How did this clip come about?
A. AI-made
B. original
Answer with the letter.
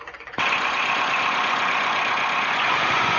A